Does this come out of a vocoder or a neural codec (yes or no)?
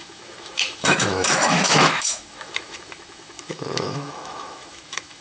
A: yes